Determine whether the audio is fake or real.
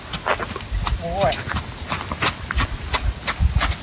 real